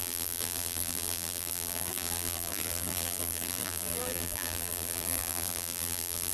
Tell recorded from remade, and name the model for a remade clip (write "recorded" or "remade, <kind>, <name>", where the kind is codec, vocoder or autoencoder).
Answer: remade, vocoder, BigVGAN v2